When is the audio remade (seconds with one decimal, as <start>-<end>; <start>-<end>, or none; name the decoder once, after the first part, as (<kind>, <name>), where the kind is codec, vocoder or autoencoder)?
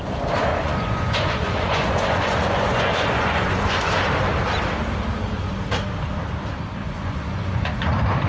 0.5-3.9 (vocoder, Vocos); 6.8-7.9